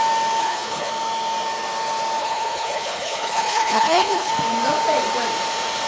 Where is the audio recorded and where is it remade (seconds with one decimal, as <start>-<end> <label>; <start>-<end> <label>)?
0.0-0.4 recorded; 0.4-0.9 remade; 0.9-2.2 recorded; 2.2-4.3 remade; 4.3-5.9 recorded